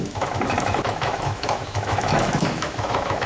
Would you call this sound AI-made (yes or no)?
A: yes